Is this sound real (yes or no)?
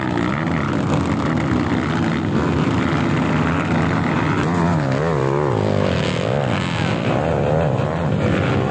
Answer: yes